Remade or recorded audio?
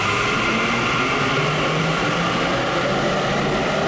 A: recorded